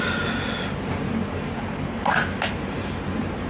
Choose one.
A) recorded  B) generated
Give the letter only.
A